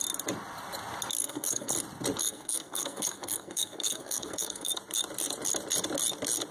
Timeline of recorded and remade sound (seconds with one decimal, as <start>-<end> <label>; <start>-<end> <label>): 0.0-1.2 recorded; 1.2-1.7 remade; 1.7-2.2 recorded; 2.2-4.7 remade; 4.7-6.5 recorded